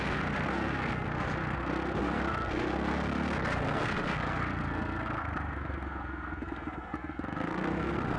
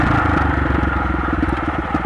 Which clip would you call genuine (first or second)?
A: second